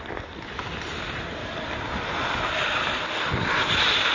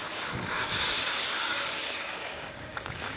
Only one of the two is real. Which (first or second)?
first